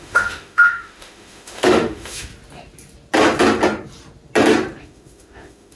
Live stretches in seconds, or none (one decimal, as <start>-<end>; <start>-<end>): 2.3-4.8